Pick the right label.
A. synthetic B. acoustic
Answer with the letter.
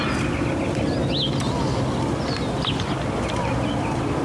B